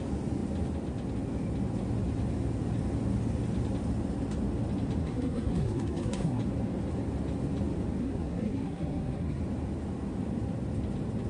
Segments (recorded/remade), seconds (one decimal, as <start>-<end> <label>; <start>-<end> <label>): 0.0-5.0 recorded; 5.0-6.4 remade; 6.4-8.0 recorded; 8.0-9.4 remade; 9.4-11.3 recorded